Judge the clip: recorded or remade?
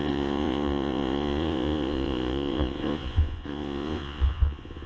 remade